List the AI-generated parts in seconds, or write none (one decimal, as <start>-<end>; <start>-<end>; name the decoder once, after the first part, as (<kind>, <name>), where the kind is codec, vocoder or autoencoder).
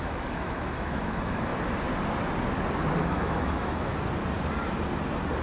0.0-1.5 (autoencoder, DAC-VAE); 3.0-3.9